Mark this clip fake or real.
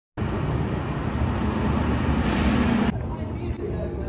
real